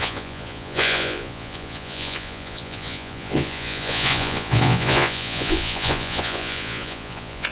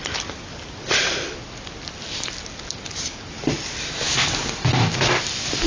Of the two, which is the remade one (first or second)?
first